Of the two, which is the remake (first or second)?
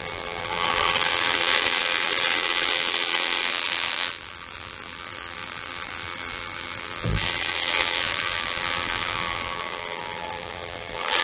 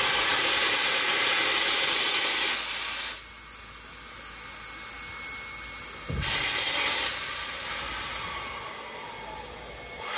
first